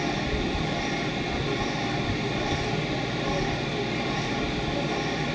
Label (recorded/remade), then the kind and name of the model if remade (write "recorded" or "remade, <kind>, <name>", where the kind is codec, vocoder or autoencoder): recorded